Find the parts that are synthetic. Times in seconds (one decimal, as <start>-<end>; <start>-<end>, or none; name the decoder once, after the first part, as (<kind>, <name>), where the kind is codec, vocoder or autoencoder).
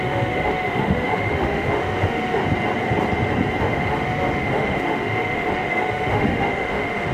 0.0-2.4 (autoencoder, DAC-VAE); 3.6-7.1